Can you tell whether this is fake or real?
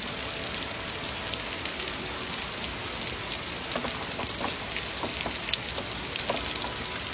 real